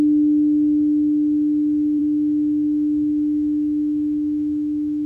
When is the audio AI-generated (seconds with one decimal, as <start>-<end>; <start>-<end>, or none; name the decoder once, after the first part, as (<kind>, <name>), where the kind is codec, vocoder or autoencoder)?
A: 2.0-5.1 (autoencoder, DAC-VAE)